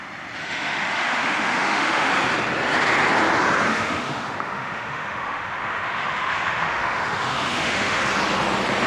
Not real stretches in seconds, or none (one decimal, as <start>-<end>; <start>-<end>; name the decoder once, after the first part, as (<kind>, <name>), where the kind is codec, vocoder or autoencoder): 0.4-2.1 (autoencoder, DAC-VAE); 3.7-8.0